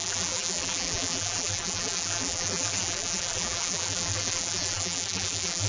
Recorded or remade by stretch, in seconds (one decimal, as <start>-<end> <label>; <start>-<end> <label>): 0.0-5.7 remade